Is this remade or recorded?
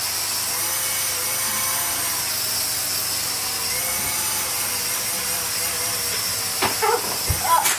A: recorded